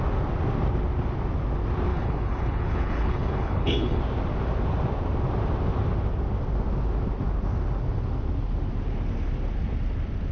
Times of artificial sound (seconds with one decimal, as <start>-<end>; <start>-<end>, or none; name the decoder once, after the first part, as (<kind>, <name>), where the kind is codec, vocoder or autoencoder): 1.9-4.0 (codec, HILCodec)